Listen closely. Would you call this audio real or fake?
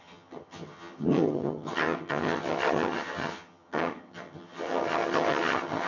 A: fake